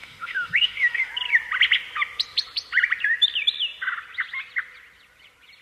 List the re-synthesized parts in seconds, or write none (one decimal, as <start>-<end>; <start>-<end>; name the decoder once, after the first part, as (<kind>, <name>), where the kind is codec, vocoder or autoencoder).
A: 0.0-1.1 (autoencoder, DAC-VAE)